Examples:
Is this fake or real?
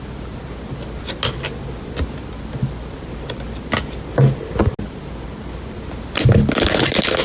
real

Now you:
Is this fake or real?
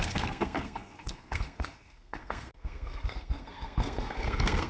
fake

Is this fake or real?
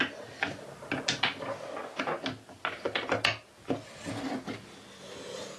real